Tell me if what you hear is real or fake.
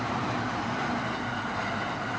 real